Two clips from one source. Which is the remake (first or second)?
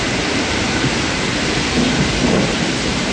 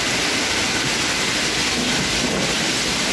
first